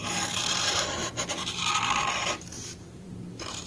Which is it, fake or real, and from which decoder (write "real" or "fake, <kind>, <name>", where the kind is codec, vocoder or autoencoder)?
fake, vocoder, BigVGAN v2